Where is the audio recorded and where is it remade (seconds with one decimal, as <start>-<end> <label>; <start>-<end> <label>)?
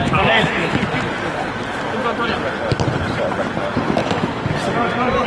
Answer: 0.0-0.8 remade; 0.8-4.0 recorded; 4.0-4.5 remade; 4.5-5.3 recorded